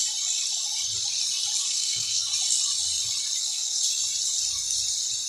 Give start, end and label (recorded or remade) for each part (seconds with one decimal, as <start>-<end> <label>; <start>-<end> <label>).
0.0-1.6 recorded; 1.6-2.3 remade; 2.3-3.4 recorded; 3.4-3.8 remade; 3.8-5.3 recorded